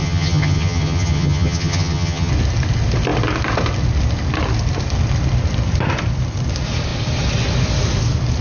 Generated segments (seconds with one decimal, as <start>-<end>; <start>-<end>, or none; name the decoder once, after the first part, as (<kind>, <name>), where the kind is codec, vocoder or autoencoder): 0.0-2.3 (vocoder, HiFi-GAN)